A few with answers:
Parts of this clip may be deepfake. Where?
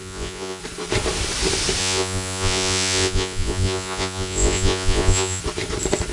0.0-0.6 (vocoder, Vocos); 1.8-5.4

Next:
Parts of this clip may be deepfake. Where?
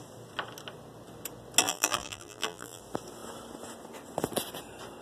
1.6-2.8 (vocoder, BigVGAN v2)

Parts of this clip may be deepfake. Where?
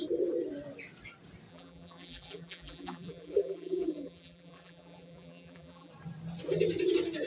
1.5-5.9 (vocoder, BigVGAN v2)